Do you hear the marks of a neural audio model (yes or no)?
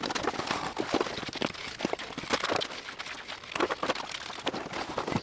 no